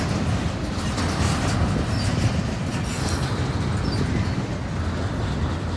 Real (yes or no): yes